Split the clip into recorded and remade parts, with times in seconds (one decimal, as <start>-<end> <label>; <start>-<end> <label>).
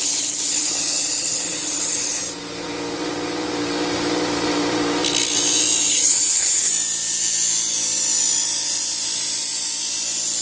0.0-2.2 remade; 2.2-5.9 recorded; 5.9-6.7 remade; 6.7-10.4 recorded